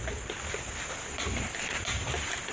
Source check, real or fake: real